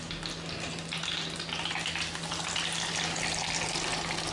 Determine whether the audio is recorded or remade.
recorded